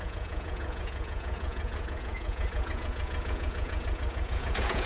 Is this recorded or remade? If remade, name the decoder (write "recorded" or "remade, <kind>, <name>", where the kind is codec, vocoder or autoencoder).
remade, vocoder, Vocos